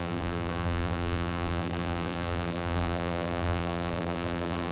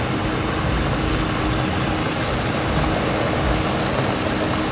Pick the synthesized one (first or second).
first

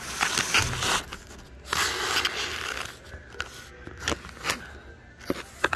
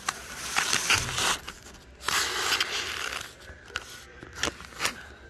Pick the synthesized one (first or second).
second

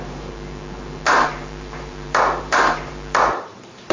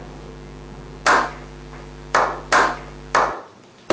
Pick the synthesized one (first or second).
first